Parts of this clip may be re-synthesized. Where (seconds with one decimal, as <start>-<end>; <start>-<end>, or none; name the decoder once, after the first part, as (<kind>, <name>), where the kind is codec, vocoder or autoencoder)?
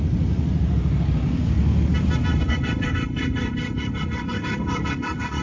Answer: 2.3-5.4 (codec, HILCodec)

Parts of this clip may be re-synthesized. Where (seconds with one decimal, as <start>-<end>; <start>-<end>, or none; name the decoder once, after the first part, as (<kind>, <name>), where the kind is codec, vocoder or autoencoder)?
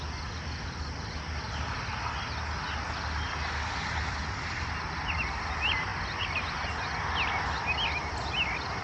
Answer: none